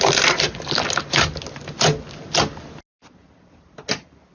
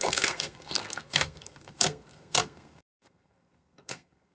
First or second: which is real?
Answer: first